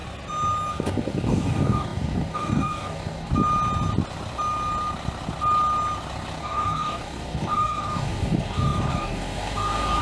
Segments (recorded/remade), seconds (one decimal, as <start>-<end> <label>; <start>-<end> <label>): 0.0-0.7 recorded; 0.7-3.3 remade; 3.3-6.4 recorded; 6.4-10.0 remade